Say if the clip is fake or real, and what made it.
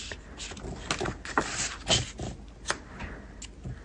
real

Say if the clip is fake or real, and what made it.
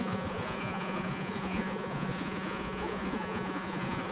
fake, vocoder, Vocos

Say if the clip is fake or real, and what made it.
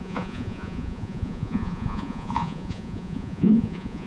fake, vocoder, Vocos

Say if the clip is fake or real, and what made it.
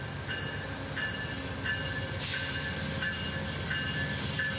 real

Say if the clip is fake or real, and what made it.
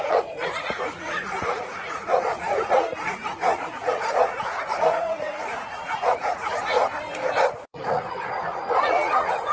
fake, vocoder, Vocos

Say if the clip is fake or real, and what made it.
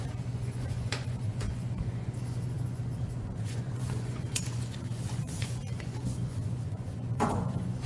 fake, vocoder, Vocos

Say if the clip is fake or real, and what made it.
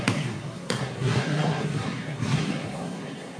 fake, codec, SNAC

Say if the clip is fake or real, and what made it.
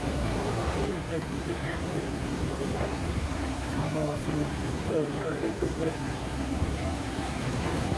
fake, codec, SNAC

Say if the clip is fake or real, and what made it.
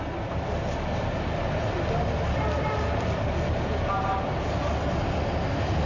real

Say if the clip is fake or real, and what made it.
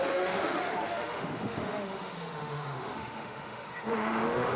fake, autoencoder, DAC-VAE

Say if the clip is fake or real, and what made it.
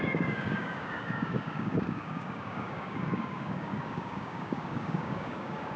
fake, codec, DAC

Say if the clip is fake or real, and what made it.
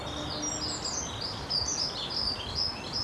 real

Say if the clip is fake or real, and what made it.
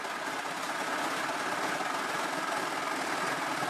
real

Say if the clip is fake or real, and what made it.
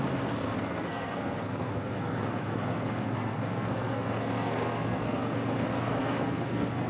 fake, codec, SNAC